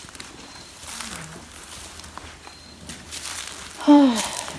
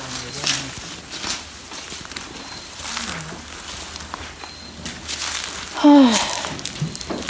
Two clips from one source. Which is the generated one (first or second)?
first